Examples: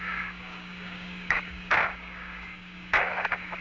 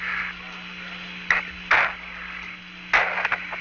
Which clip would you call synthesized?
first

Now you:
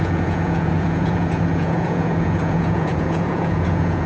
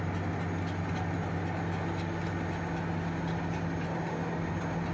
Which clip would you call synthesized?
first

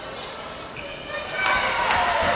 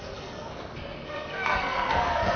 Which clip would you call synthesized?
second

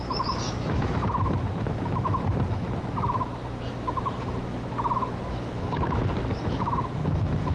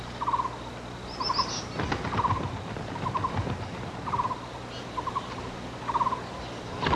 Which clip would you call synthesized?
first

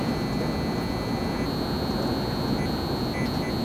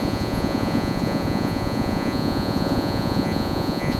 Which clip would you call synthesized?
second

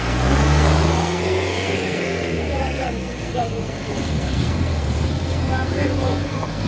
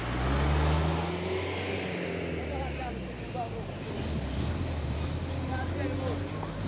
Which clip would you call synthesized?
first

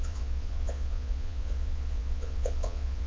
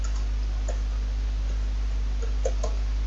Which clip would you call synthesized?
first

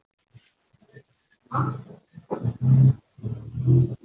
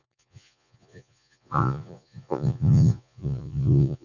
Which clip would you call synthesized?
second